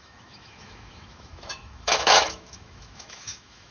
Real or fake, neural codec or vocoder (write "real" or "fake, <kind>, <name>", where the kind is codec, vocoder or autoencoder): fake, autoencoder, DAC-VAE